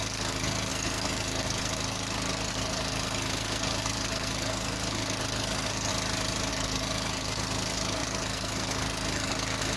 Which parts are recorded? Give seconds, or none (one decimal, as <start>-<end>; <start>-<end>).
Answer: 5.9-6.5

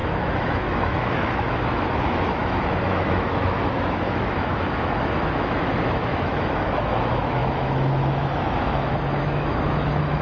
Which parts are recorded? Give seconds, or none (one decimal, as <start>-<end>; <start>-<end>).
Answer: none

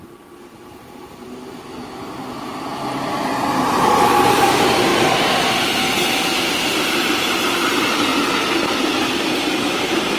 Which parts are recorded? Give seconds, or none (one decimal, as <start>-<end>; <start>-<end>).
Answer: 3.3-4.0; 4.9-6.4; 8.1-9.5

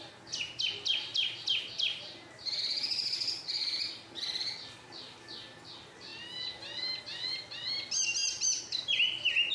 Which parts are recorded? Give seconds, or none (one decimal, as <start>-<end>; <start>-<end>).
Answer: 0.0-8.2

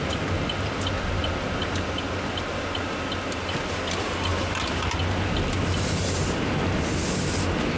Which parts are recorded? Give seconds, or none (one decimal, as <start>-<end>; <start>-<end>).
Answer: 0.0-7.8

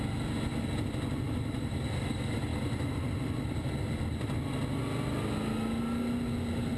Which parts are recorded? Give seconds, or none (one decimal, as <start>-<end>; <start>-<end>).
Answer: 0.0-6.8

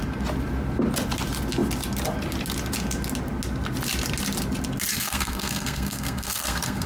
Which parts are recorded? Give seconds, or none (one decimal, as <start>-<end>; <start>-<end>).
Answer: 0.0-4.9

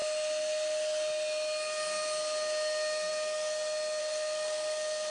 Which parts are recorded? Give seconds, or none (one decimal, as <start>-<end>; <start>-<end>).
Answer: 0.0-4.0